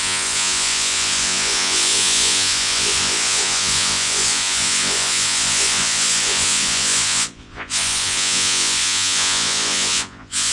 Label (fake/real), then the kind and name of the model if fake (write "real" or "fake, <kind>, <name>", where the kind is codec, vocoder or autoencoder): fake, vocoder, Vocos